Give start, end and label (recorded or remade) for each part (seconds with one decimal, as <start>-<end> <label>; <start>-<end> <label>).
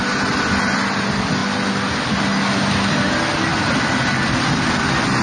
0.0-5.2 recorded